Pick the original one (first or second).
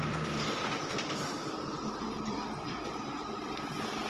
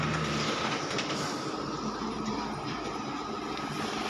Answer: second